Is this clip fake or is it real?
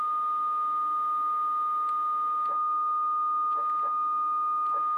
real